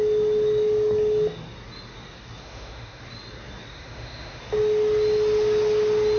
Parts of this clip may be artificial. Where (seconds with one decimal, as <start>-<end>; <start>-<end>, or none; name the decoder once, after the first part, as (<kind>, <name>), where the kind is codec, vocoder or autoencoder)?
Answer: 2.4-3.0 (autoencoder, DAC-VAE); 3.7-4.4